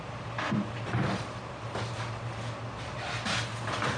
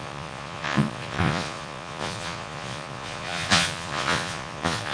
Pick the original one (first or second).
first